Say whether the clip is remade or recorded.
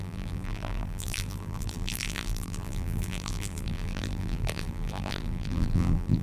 remade